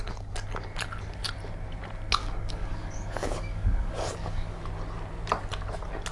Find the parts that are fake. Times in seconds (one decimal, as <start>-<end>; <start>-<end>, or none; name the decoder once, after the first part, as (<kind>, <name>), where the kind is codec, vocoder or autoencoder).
2.2-4.6 (codec, DAC)